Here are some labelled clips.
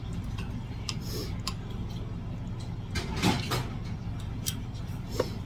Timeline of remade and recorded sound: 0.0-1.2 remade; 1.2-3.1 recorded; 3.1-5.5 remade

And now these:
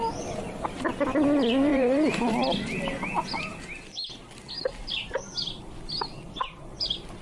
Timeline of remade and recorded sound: 0.0-1.7 recorded; 1.7-2.3 remade; 2.3-7.2 recorded

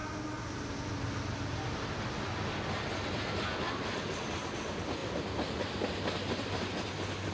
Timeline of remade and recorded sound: 0.0-7.3 recorded

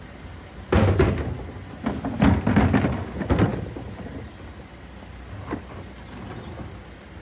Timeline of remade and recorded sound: 0.0-7.2 recorded

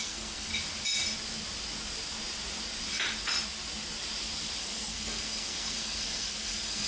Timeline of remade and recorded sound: 0.0-0.5 remade; 0.5-4.6 recorded; 4.6-6.9 remade

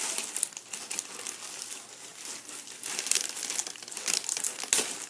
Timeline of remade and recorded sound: 0.0-5.1 recorded

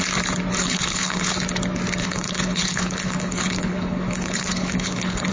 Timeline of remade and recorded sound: 0.0-0.6 recorded; 0.6-1.3 remade; 1.3-2.0 recorded; 2.0-5.3 remade